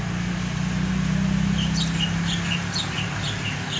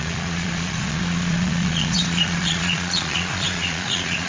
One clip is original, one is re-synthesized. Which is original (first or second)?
first